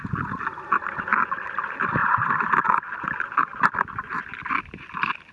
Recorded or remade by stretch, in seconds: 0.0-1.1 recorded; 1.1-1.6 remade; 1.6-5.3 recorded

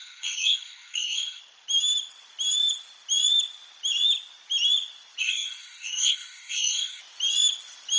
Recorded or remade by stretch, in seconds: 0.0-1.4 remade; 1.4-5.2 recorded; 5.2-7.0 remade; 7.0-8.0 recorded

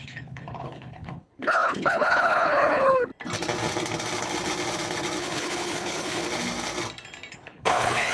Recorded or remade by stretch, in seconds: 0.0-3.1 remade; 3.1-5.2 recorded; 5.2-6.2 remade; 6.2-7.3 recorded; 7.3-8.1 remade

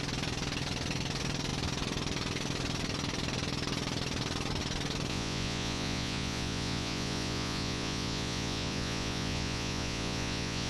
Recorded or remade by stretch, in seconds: 0.0-5.1 recorded; 5.1-10.7 remade

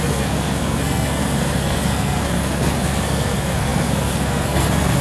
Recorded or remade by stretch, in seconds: 0.0-5.0 remade

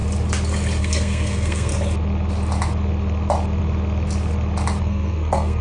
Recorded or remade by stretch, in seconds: 0.0-0.8 recorded; 0.8-1.7 remade; 1.7-4.8 recorded; 4.8-5.6 remade

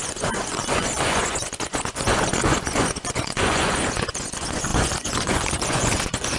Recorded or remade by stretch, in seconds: 0.0-6.4 remade

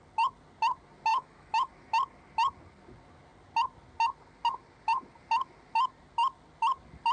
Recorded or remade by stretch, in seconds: 0.0-1.1 recorded; 1.1-1.7 remade; 1.7-7.1 recorded